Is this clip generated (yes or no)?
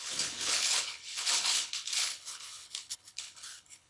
yes